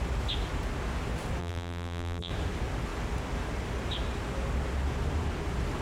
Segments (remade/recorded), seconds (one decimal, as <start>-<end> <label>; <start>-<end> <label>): 0.0-1.4 recorded; 1.4-2.3 remade; 2.3-5.8 recorded